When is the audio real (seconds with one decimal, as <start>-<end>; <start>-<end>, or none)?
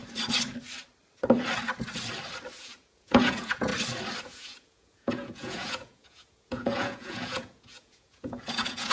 0.0-2.6; 3.7-4.2